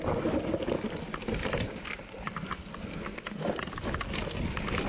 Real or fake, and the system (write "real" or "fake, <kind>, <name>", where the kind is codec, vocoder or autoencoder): real